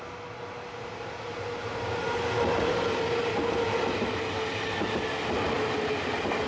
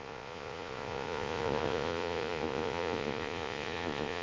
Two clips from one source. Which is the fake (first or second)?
second